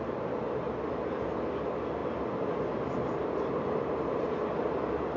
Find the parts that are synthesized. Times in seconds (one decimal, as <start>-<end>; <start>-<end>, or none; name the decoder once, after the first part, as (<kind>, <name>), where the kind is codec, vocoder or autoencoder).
none